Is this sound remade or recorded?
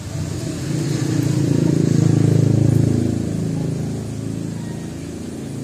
recorded